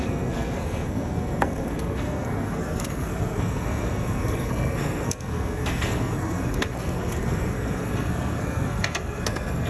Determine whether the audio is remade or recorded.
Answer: remade